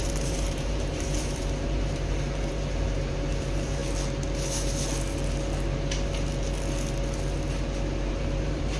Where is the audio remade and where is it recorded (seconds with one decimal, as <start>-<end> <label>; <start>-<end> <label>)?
0.0-3.8 remade; 3.8-8.1 recorded; 8.1-8.8 remade